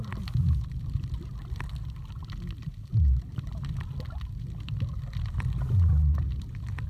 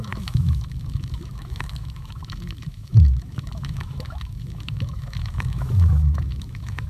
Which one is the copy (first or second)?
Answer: second